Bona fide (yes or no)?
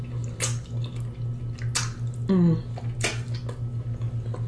yes